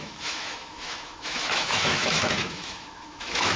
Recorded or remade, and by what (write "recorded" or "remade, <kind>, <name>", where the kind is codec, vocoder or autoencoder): remade, autoencoder, DAC-VAE